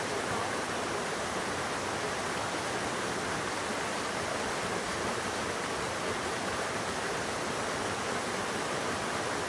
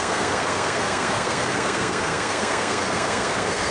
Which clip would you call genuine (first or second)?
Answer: first